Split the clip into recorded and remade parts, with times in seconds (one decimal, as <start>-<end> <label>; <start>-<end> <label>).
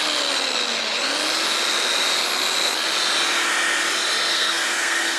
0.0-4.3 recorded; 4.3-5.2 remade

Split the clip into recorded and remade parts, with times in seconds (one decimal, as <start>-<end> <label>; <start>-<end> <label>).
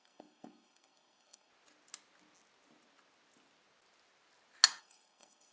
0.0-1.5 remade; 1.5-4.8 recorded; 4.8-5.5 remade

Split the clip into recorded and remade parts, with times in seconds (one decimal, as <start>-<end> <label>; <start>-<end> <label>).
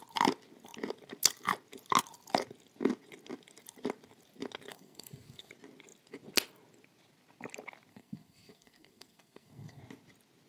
0.0-4.7 recorded; 4.7-5.5 remade; 5.5-7.9 recorded; 7.9-9.8 remade; 9.8-10.5 recorded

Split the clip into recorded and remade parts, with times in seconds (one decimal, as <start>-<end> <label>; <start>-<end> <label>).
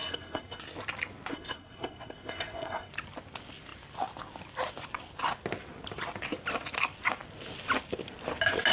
0.0-0.6 remade; 0.6-1.3 recorded; 1.3-2.9 remade; 2.9-8.7 recorded